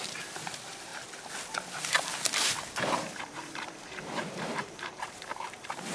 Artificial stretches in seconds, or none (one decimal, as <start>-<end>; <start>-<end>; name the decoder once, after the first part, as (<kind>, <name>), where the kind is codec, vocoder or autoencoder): 0.0-0.9 (vocoder, BigVGAN v2); 1.8-5.9